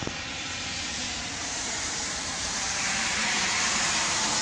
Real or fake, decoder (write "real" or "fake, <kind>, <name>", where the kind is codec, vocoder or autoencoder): fake, vocoder, BigVGAN v2